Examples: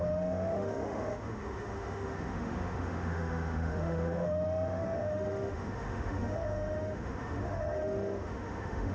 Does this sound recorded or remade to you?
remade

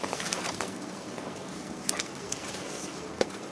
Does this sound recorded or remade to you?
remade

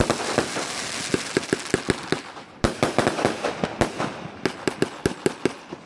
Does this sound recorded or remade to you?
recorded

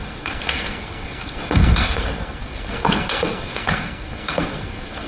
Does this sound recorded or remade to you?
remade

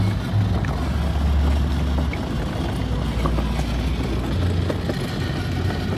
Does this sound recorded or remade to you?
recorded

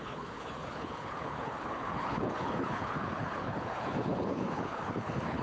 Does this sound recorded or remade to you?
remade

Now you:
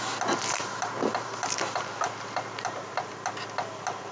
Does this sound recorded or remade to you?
recorded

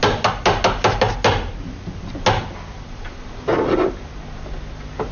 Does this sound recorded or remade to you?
recorded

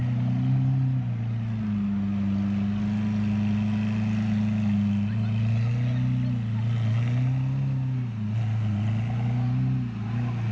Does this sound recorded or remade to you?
recorded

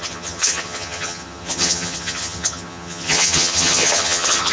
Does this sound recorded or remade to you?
remade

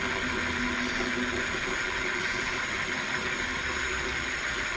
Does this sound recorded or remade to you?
recorded